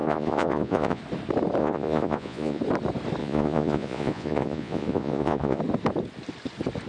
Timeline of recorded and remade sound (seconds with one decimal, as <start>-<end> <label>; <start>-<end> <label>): 0.0-1.0 remade; 1.0-1.6 recorded; 1.6-2.6 remade; 2.6-3.2 recorded; 3.2-5.6 remade; 5.6-6.9 recorded

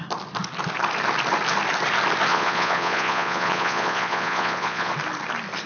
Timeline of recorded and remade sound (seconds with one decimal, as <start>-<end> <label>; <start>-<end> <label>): 0.0-2.3 recorded; 2.3-4.9 remade; 4.9-5.7 recorded

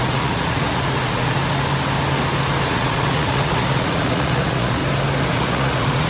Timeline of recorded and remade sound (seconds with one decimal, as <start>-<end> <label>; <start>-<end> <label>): 0.0-1.4 remade; 1.4-2.7 recorded; 2.7-4.8 remade; 4.8-5.3 recorded; 5.3-6.1 remade

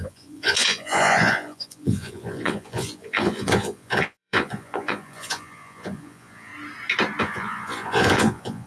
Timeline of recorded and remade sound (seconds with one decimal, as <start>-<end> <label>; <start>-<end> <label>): 0.0-6.5 remade; 6.5-7.2 recorded; 7.2-8.7 remade

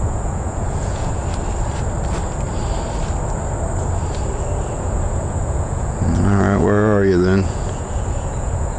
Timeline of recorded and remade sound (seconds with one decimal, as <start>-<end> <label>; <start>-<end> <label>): 0.0-1.2 remade; 1.2-4.7 recorded; 4.7-8.8 remade